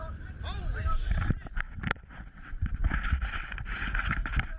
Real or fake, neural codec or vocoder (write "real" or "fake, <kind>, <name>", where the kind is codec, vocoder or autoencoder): fake, vocoder, BigVGAN v2